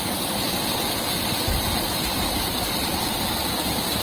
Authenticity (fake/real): real